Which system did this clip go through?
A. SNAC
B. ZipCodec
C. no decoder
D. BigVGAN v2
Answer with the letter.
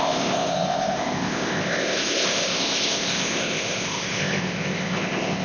B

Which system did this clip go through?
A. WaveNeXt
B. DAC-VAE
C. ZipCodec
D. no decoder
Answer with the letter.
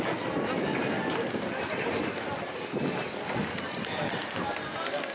D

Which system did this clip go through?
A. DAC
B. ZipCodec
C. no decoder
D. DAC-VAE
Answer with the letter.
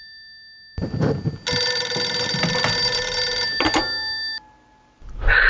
C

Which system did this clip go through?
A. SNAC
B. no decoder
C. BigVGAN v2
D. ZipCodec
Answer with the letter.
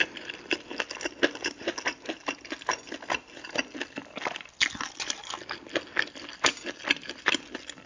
B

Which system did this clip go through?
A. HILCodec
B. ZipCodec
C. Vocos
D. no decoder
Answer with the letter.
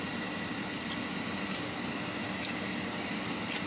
D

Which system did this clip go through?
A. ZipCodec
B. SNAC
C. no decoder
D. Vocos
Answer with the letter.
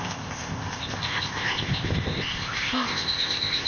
A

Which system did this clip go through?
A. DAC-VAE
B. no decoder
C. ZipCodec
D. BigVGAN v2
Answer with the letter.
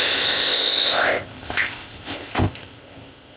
C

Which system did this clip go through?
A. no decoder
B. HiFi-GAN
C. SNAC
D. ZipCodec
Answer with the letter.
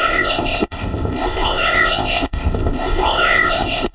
D